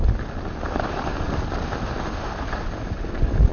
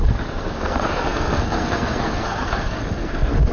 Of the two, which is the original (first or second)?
first